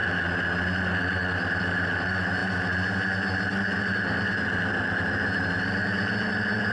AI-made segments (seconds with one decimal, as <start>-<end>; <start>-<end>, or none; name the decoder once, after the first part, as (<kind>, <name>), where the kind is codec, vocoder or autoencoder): none